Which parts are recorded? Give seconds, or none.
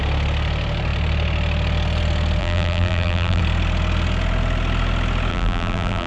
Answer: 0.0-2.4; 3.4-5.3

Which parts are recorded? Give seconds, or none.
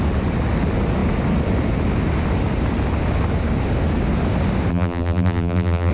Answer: 0.0-4.7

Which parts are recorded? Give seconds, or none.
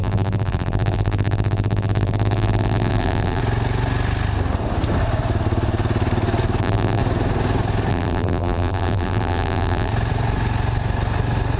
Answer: 3.4-6.6; 7.0-7.9; 9.9-11.6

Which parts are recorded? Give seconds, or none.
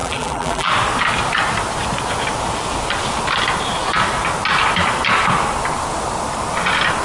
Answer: 0.7-7.0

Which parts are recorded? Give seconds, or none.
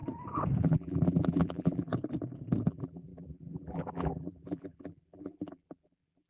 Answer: 0.0-0.6; 1.9-2.7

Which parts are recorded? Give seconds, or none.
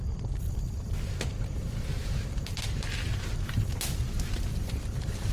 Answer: 0.0-4.5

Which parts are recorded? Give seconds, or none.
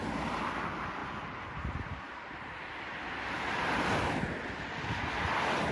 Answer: 0.0-1.0; 1.8-5.7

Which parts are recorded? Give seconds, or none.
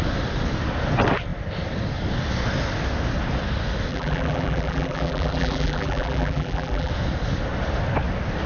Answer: 0.0-3.9; 6.9-8.5